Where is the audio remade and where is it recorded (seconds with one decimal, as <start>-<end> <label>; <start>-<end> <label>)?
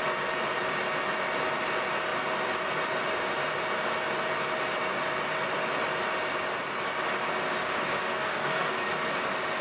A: 0.0-8.0 recorded; 8.0-8.9 remade; 8.9-9.6 recorded